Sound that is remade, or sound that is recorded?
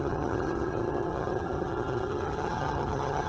remade